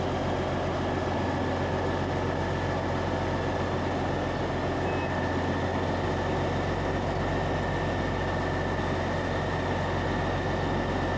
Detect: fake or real real